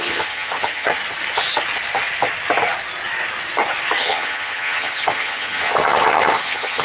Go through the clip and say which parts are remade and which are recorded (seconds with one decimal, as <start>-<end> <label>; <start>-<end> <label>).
0.0-1.0 remade; 1.0-4.0 recorded; 4.0-6.8 remade